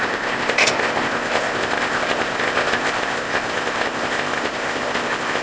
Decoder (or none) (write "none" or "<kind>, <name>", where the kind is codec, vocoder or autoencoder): codec, ZipCodec